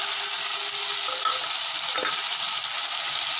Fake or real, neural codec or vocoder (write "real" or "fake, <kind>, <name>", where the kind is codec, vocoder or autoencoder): real